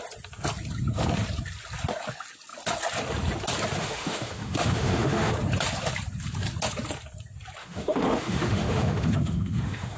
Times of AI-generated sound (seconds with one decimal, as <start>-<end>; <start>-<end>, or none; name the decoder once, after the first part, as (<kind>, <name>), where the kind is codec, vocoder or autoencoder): 3.8-5.3 (autoencoder, DAC-VAE); 7.6-10.0

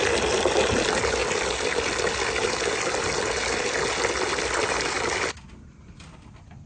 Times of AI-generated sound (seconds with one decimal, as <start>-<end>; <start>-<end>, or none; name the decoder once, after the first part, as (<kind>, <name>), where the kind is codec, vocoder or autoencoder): none

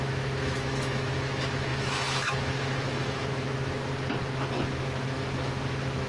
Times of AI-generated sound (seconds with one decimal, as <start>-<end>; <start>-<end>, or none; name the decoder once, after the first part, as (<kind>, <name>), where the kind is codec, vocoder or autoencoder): 0.0-3.9 (autoencoder, DAC-VAE); 4.4-6.1

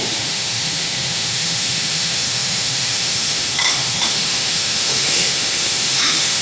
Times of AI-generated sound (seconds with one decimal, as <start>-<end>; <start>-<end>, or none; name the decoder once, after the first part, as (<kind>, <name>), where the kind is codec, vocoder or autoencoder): 0.0-6.4 (autoencoder, DAC-VAE)